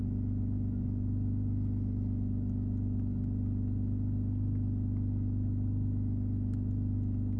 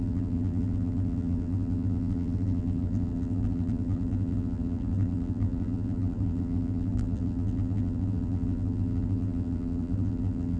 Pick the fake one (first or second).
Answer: second